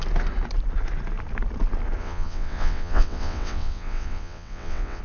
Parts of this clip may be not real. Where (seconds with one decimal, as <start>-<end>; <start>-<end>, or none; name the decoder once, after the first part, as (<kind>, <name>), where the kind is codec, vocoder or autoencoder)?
2.0-5.0 (vocoder, WaveNeXt)